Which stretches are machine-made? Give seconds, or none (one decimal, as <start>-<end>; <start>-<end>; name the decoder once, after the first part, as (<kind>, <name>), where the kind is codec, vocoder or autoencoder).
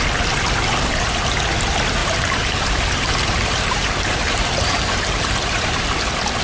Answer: 2.0-5.8 (vocoder, BigVGAN v2)